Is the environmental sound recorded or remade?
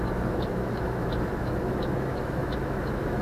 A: remade